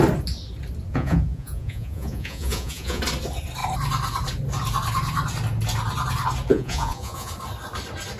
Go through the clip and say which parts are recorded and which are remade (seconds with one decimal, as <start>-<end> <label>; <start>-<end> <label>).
0.0-0.9 recorded; 0.9-3.0 remade; 3.0-6.5 recorded; 6.5-7.3 remade; 7.3-8.2 recorded